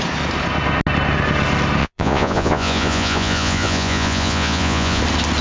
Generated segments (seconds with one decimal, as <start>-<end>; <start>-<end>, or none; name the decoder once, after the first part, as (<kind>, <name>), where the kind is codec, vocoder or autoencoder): 1.8-5.0 (vocoder, Vocos)